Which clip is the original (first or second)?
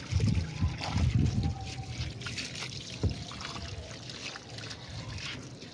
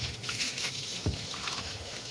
first